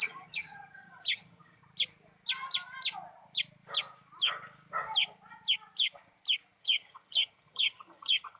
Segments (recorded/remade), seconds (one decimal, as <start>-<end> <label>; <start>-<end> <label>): 0.0-1.6 remade; 1.6-6.6 recorded; 6.6-8.4 remade